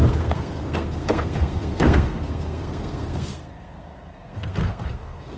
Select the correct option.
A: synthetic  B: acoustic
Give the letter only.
A